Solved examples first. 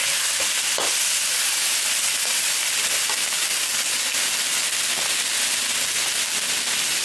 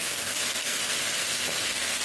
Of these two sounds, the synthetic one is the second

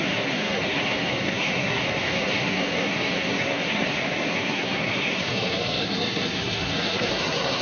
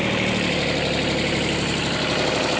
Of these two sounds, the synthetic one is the first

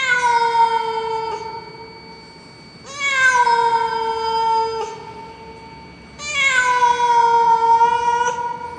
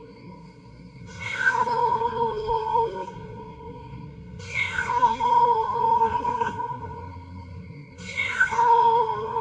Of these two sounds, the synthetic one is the second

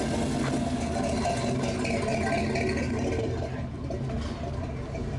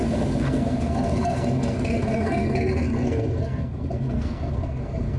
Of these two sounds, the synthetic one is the second